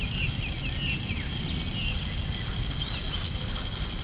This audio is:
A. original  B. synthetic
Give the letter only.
A